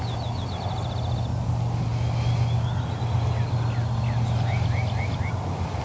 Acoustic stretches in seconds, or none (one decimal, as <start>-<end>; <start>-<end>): 0.0-5.8